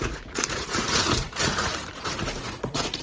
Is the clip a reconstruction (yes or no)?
yes